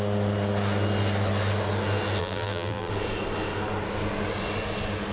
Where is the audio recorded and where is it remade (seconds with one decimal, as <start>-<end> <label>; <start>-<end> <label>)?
0.0-2.2 recorded; 2.2-2.9 remade; 2.9-5.1 recorded